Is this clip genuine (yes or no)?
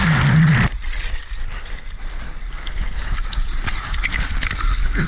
yes